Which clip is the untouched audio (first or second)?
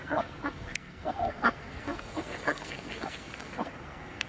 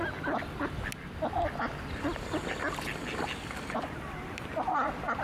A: second